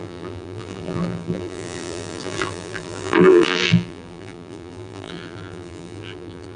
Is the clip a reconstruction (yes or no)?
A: yes